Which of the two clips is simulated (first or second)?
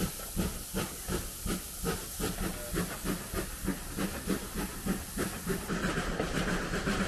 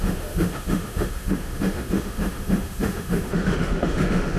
second